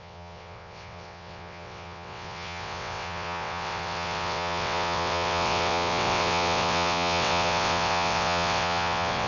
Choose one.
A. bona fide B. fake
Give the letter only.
B